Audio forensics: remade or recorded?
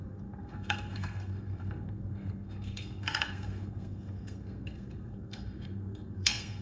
remade